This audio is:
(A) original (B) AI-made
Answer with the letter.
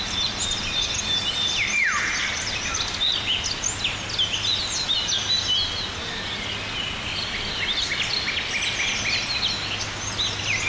A